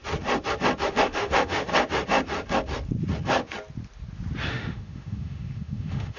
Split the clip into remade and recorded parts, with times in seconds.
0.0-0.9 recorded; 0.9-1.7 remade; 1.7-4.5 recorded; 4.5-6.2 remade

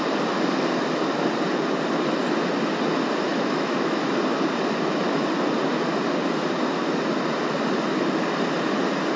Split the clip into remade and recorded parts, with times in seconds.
0.0-3.3 recorded; 3.3-4.1 remade; 4.1-9.2 recorded

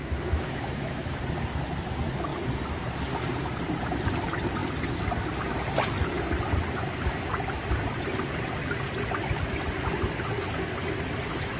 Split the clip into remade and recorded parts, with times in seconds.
0.0-1.2 remade; 1.2-11.6 recorded

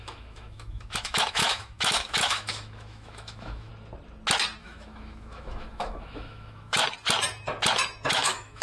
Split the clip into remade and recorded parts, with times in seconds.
0.0-3.7 remade; 3.7-4.6 recorded; 4.6-6.8 remade; 6.8-8.1 recorded; 8.1-8.6 remade

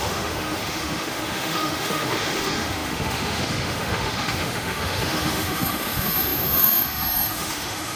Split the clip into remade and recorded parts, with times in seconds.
0.0-8.0 remade

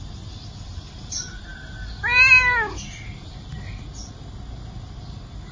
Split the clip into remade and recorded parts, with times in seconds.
0.0-5.5 recorded